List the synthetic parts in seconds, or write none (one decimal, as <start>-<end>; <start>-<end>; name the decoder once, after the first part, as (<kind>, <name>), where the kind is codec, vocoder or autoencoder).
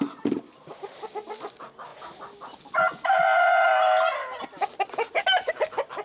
none